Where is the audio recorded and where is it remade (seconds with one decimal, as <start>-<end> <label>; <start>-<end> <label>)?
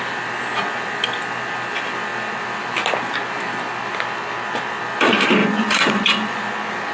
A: 0.0-5.4 recorded; 5.4-6.4 remade; 6.4-6.9 recorded